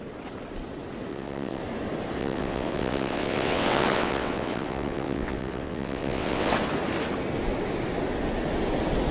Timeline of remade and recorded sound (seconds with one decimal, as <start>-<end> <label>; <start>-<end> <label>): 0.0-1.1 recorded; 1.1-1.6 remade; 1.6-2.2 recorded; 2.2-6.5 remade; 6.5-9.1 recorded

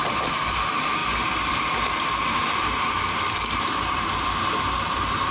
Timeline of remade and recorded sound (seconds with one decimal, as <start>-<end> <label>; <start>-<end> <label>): 0.0-5.3 remade

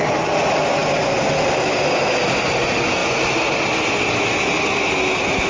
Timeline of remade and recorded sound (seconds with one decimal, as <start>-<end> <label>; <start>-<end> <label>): 0.0-5.5 recorded

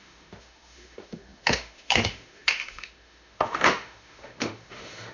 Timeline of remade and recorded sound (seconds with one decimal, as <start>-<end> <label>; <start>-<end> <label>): 0.0-5.1 remade

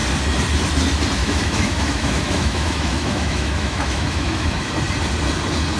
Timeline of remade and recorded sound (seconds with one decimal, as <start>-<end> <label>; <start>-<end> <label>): 0.0-1.2 recorded; 1.2-4.7 remade; 4.7-5.8 recorded

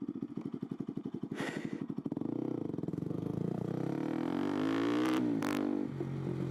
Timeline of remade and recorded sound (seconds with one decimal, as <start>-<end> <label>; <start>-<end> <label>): 0.0-2.9 recorded; 2.9-3.7 remade; 3.7-6.5 recorded

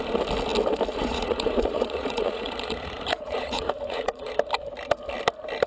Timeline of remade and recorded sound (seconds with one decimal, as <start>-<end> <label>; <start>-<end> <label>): 0.0-0.9 recorded; 0.9-4.3 remade; 4.3-5.7 recorded

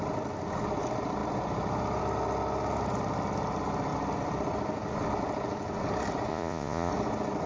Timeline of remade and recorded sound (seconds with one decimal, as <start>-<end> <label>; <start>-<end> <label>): 0.0-6.3 recorded; 6.3-6.9 remade; 6.9-7.5 recorded